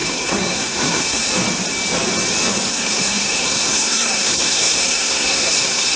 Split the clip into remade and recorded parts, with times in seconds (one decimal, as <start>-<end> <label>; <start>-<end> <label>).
0.0-1.3 remade; 1.3-2.7 recorded; 2.7-6.0 remade